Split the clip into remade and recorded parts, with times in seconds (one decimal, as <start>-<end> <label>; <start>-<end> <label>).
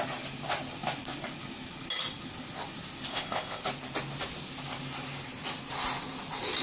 0.0-3.1 recorded; 3.1-3.6 remade; 3.6-6.6 recorded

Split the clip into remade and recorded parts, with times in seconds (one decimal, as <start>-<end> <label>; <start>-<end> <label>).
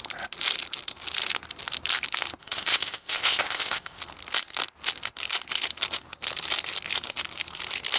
0.0-2.4 recorded; 2.4-4.0 remade; 4.0-8.0 recorded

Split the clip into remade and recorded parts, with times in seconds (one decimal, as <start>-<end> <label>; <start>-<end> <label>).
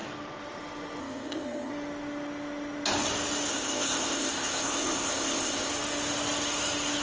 0.0-1.0 recorded; 1.0-1.7 remade; 1.7-3.5 recorded; 3.5-5.7 remade; 5.7-7.0 recorded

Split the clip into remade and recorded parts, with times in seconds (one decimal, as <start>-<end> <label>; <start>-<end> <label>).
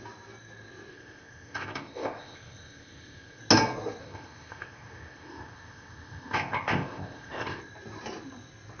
0.0-0.9 recorded; 0.9-3.4 remade; 3.4-4.0 recorded; 4.0-7.6 remade; 7.6-8.8 recorded